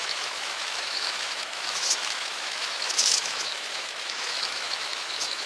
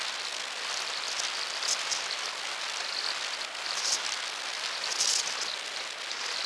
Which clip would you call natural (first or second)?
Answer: second